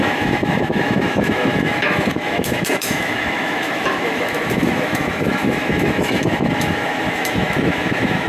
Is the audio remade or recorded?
remade